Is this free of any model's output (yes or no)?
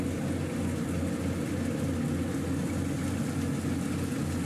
yes